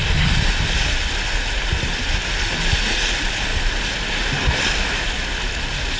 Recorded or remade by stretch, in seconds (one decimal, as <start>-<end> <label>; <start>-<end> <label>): 0.0-6.0 recorded

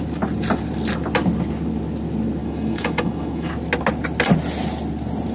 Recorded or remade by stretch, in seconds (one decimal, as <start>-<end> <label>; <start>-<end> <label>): 0.0-2.4 recorded; 2.4-3.5 remade; 3.5-5.3 recorded

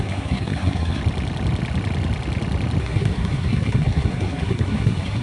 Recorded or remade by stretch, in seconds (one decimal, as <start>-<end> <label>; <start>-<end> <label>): 0.0-1.0 remade; 1.0-2.8 recorded; 2.8-5.2 remade

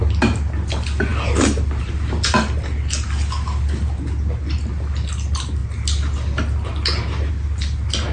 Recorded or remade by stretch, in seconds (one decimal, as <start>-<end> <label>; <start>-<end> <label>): 0.0-8.1 recorded

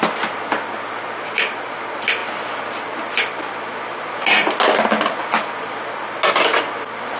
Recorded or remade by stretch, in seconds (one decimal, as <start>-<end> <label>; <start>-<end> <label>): 0.0-7.2 recorded

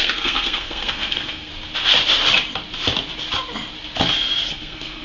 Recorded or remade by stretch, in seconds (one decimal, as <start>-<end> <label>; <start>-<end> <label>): 0.0-1.5 remade; 1.5-4.5 recorded; 4.5-5.0 remade